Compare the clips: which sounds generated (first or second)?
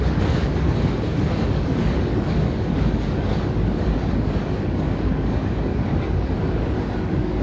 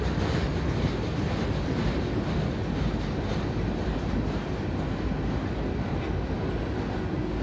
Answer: first